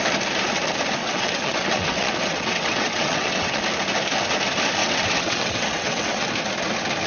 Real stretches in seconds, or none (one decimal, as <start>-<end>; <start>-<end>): 0.0-1.0; 3.6-4.8; 6.3-7.1